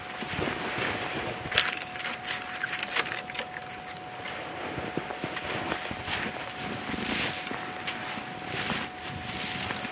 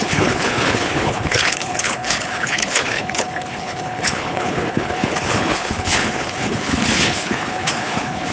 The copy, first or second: second